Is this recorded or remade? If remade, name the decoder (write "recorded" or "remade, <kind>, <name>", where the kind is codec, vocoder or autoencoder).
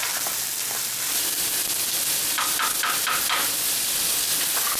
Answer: recorded